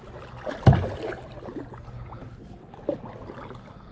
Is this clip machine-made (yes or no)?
no